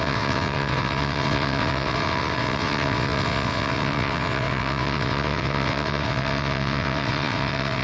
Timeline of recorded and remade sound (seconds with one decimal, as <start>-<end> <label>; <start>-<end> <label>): 0.0-7.8 remade

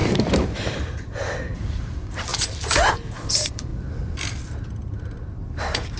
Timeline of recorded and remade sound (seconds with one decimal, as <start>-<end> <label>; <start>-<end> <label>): 0.0-2.3 remade; 2.3-2.9 recorded; 2.9-3.7 remade; 3.7-5.6 recorded; 5.6-6.0 remade